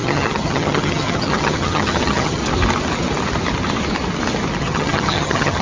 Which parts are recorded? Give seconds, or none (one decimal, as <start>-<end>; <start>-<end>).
2.4-4.6